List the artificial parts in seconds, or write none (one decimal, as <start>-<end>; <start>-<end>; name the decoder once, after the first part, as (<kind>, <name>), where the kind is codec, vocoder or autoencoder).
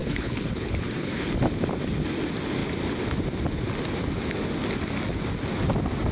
0.0-1.3 (codec, HILCodec)